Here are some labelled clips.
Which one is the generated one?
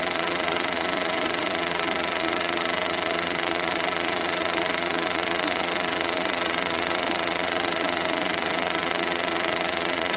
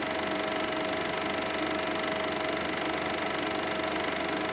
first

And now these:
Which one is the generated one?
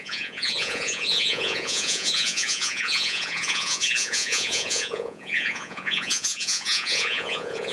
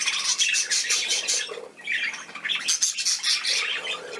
first